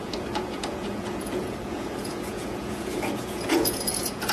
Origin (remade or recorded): remade